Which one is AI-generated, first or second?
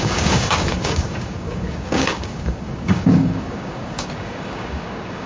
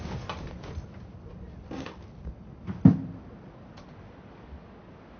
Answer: first